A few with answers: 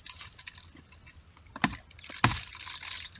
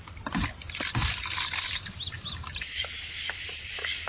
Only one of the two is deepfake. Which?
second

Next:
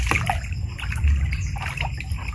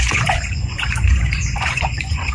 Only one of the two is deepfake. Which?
second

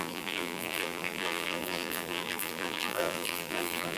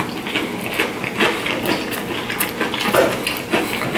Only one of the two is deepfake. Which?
first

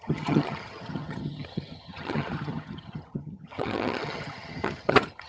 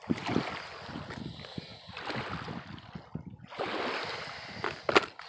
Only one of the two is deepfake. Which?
first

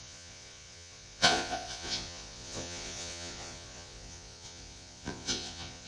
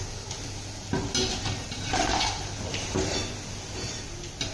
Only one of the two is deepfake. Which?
first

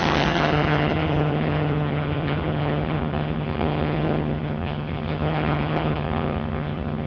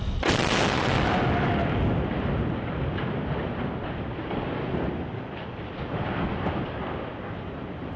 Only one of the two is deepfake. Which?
first